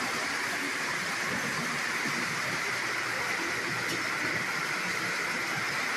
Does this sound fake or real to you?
real